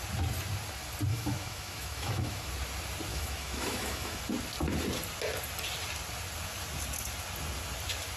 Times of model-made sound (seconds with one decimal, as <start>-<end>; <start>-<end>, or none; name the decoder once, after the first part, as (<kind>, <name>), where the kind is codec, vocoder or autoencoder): 1.1-2.5 (autoencoder, DAC-VAE); 3.1-4.2